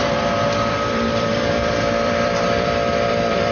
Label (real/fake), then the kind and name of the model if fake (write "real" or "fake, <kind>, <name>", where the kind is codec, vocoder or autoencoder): fake, vocoder, BigVGAN v2